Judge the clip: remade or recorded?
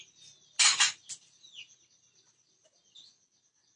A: recorded